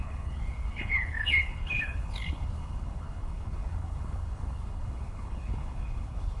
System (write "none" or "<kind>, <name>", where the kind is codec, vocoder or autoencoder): codec, HILCodec